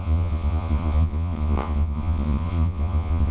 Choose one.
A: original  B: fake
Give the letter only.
B